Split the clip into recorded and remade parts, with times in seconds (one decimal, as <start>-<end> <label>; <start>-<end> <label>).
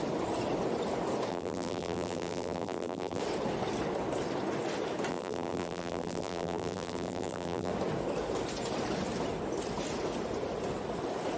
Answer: 0.0-1.3 recorded; 1.3-3.2 remade; 3.2-5.1 recorded; 5.1-7.7 remade; 7.7-11.4 recorded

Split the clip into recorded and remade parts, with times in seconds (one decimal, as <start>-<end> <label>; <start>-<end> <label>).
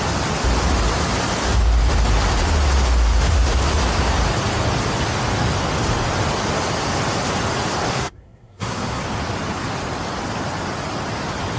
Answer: 0.0-7.9 recorded; 7.9-9.0 remade; 9.0-11.6 recorded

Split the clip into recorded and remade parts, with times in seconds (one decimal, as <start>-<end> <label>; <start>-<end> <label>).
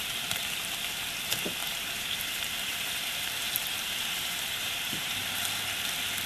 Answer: 0.0-1.6 recorded; 1.6-5.4 remade; 5.4-6.3 recorded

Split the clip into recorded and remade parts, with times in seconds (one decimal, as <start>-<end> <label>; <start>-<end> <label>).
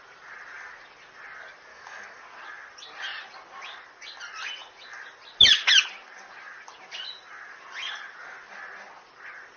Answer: 0.0-1.7 recorded; 1.7-2.2 remade; 2.2-9.6 recorded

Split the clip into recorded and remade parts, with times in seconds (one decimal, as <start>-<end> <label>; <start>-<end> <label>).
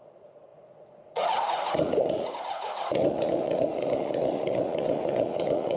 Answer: 0.0-5.8 remade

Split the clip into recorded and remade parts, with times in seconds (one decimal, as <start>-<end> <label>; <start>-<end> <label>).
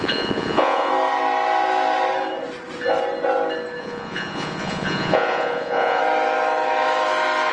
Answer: 0.0-0.9 remade; 0.9-3.8 recorded; 3.8-6.0 remade; 6.0-7.5 recorded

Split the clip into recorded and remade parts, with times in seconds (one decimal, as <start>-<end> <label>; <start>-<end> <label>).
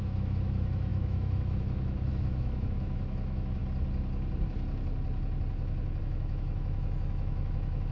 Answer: 0.0-3.6 remade; 3.6-6.0 recorded; 6.0-7.9 remade